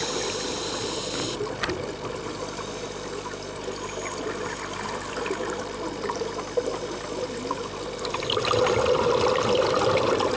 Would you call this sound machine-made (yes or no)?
no